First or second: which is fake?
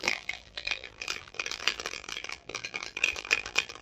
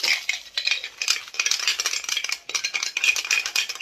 first